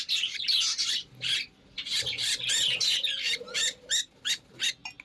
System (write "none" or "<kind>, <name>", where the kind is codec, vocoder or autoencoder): none